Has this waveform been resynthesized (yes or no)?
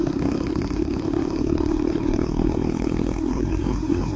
yes